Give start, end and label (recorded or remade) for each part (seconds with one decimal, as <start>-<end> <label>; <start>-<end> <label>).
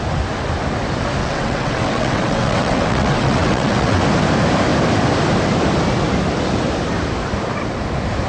0.0-1.2 recorded; 1.2-4.0 remade; 4.0-8.3 recorded